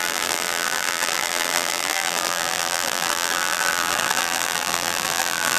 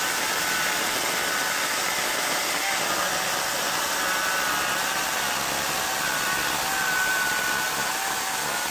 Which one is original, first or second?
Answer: second